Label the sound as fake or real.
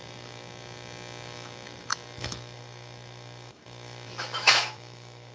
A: fake